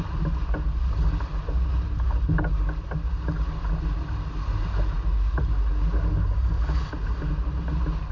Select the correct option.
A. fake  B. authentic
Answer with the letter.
B